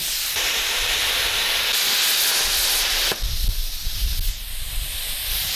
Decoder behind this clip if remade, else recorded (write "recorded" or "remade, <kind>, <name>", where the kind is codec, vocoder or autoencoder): recorded